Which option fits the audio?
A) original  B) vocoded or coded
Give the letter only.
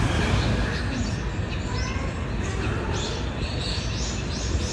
A